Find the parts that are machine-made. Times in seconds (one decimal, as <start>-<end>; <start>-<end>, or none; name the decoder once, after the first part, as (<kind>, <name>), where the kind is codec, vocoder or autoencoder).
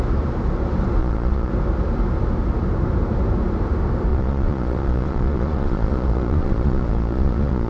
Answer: 1.0-1.5 (vocoder, Vocos); 4.1-7.7